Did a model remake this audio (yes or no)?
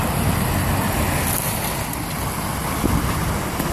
no